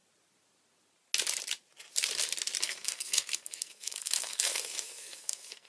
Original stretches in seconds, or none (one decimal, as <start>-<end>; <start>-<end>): 0.0-2.6

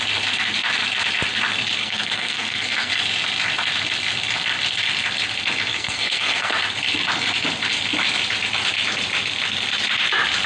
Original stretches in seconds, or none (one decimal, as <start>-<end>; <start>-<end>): 0.0-1.8; 2.9-5.7; 6.6-10.5